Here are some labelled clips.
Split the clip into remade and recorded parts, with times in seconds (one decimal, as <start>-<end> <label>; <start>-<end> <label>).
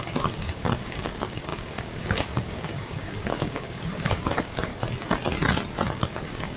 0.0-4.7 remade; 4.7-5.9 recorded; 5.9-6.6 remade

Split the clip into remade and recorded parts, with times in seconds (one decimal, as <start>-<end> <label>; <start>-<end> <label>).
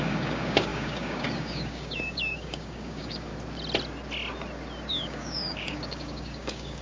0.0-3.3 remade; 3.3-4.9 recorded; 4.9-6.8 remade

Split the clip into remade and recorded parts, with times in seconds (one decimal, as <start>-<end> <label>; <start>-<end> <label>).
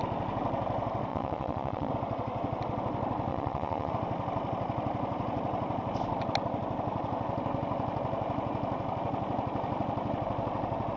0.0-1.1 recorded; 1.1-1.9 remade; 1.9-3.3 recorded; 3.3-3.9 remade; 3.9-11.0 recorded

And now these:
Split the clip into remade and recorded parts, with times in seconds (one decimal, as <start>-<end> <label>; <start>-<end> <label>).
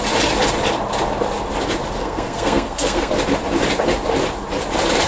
0.0-2.0 recorded; 2.0-3.1 remade; 3.1-5.1 recorded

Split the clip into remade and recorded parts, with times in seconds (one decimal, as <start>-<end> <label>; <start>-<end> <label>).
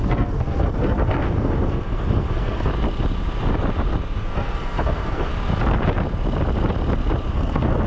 0.0-2.7 remade; 2.7-4.2 recorded; 4.2-5.3 remade; 5.3-7.3 recorded; 7.3-7.9 remade